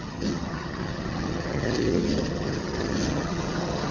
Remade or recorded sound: remade